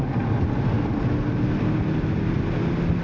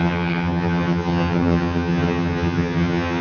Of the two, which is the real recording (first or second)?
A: first